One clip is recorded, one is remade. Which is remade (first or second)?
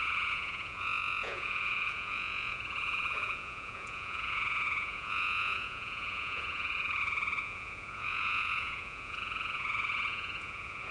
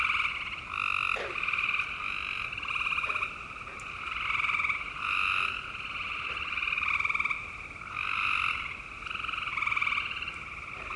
first